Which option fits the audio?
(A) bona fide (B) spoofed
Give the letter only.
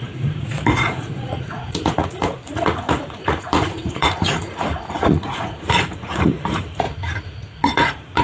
B